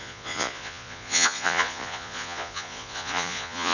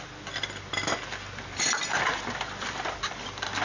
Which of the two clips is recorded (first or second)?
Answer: second